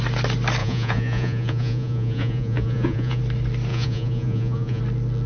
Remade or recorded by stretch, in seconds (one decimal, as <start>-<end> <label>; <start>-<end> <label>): 0.0-0.6 recorded; 0.6-3.2 remade; 3.2-3.7 recorded; 3.7-4.8 remade; 4.8-5.3 recorded